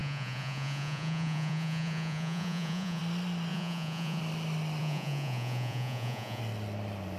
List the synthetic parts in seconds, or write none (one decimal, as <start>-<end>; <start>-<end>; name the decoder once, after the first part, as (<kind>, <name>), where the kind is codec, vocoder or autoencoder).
0.0-3.0 (vocoder, Vocos); 3.5-4.2; 4.8-6.4